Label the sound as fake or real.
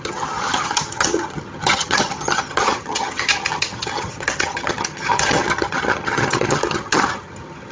fake